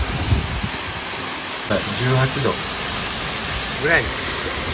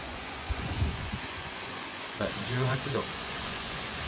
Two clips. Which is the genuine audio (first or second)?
first